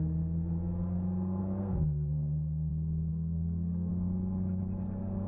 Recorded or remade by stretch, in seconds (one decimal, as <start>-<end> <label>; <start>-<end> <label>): 0.0-1.4 recorded; 1.4-2.7 remade; 2.7-3.1 recorded; 3.1-3.9 remade; 3.9-5.3 recorded

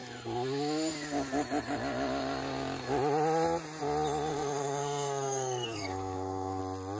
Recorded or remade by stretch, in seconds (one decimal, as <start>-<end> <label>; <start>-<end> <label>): 0.0-4.3 recorded; 4.3-6.6 remade; 6.6-7.0 recorded

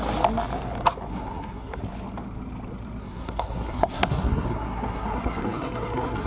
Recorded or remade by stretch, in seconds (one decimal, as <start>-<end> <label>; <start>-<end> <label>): 0.0-1.1 recorded; 1.1-1.8 remade; 1.8-3.0 recorded; 3.0-6.3 remade

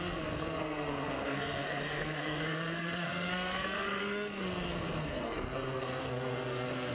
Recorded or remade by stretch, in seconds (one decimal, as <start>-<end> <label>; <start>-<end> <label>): 0.0-6.9 remade

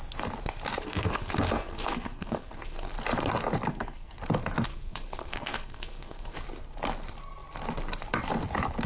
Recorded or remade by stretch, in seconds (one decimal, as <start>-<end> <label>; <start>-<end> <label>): 0.0-0.8 recorded; 0.8-2.9 remade; 2.9-3.7 recorded; 3.7-4.2 remade; 4.2-4.7 recorded; 4.7-6.4 remade; 6.4-8.9 recorded